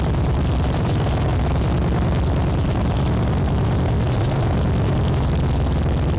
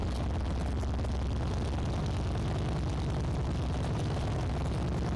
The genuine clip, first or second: second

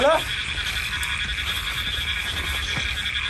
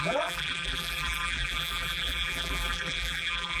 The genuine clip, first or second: first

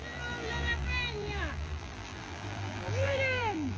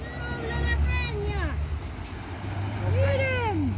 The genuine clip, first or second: second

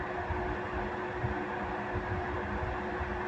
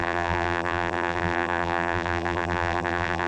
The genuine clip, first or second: first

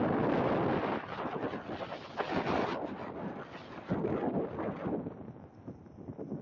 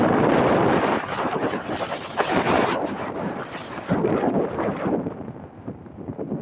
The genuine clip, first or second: first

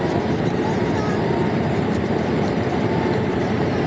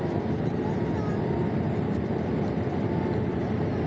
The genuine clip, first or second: second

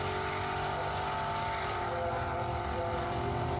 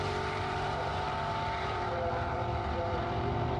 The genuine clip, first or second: first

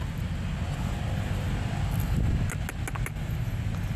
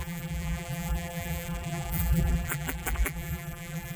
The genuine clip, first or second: first